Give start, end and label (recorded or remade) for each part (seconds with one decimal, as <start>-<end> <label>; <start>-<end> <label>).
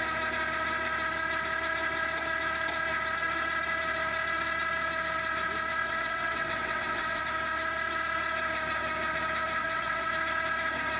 0.0-5.8 recorded; 5.8-7.2 remade; 7.2-9.6 recorded; 9.6-10.1 remade; 10.1-11.0 recorded